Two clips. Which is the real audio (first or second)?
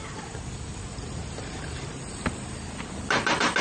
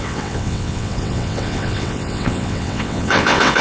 first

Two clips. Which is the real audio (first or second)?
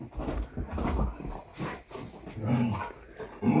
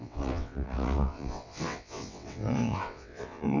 first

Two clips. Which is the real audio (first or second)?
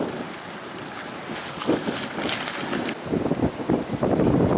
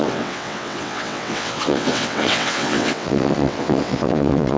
first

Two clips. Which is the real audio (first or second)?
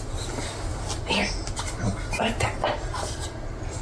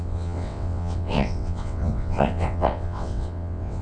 first